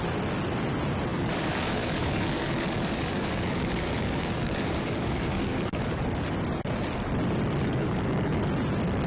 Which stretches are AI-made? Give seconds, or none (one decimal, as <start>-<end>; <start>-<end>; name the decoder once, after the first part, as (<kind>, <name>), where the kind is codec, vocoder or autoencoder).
1.1-6.0 (codec, DAC); 7.6-8.4